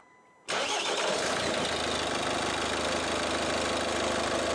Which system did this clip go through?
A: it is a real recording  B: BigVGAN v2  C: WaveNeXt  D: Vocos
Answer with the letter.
A